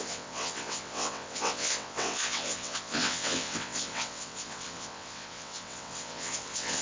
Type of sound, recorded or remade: remade